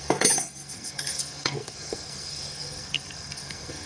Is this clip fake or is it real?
fake